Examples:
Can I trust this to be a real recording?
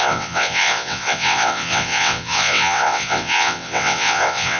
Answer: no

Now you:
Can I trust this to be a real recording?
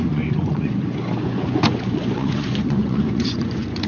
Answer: no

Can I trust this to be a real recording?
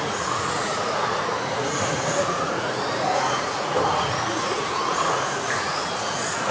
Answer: no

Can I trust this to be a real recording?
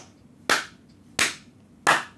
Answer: yes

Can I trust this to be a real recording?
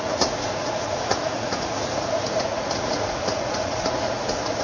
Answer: no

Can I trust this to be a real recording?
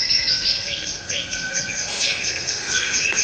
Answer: no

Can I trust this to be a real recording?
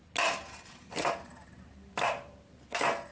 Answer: yes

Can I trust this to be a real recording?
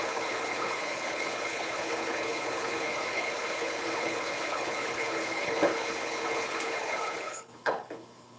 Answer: no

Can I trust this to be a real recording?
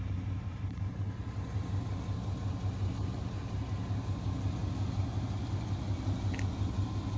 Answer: yes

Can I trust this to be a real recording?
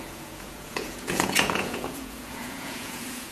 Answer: no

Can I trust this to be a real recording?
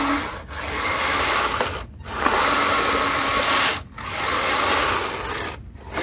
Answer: yes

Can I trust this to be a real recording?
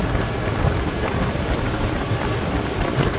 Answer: yes